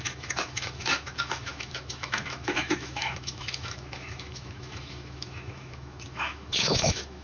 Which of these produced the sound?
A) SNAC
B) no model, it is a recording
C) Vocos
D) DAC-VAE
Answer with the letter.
D